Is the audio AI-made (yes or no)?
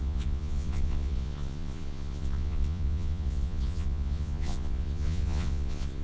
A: yes